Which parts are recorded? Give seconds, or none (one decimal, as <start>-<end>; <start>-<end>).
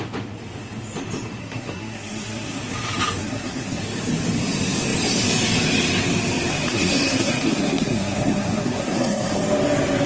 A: 0.0-1.4; 2.6-3.2; 3.8-6.5; 9.4-10.1